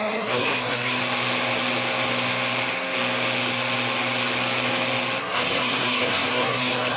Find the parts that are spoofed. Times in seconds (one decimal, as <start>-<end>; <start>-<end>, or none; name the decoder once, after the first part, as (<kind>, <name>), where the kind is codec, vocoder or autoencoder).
0.0-1.0 (codec, SNAC); 5.2-7.0